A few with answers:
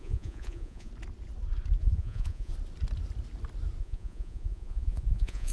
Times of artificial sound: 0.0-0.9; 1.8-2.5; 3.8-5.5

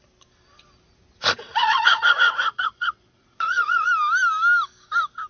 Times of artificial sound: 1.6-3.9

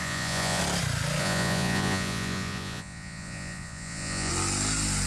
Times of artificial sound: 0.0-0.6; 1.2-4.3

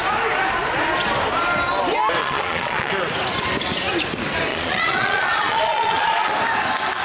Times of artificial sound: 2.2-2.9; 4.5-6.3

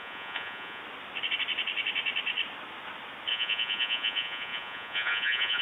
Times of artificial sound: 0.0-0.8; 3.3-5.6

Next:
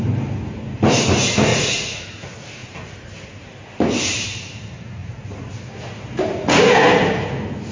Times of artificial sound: 1.5-2.0; 5.0-5.5

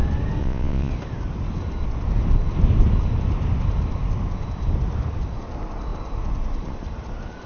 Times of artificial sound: 0.4-0.9

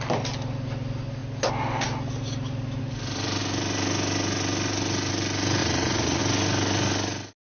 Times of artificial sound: 5.6-6.2